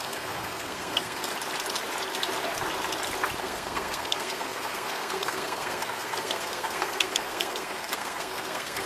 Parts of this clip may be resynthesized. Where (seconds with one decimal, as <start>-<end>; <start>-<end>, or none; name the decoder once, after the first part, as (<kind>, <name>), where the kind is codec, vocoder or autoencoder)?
0.0-1.3 (codec, SNAC); 3.4-8.9